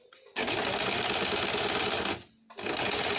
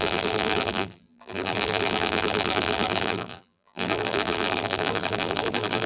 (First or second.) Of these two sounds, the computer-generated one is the second